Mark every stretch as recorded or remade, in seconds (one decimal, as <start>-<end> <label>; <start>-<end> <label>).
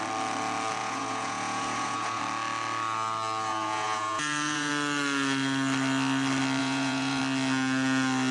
0.0-0.8 recorded; 0.8-2.2 remade; 2.2-3.5 recorded; 3.5-4.7 remade; 4.7-6.6 recorded; 6.6-7.2 remade; 7.2-8.3 recorded